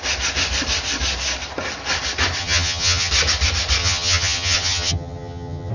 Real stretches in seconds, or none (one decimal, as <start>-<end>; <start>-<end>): 0.0-2.4; 3.1-3.8